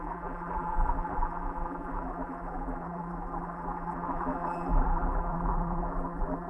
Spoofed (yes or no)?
yes